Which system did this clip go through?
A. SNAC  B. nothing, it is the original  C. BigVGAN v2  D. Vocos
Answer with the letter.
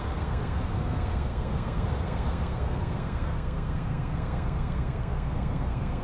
A